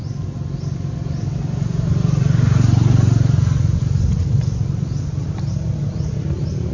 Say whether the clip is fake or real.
real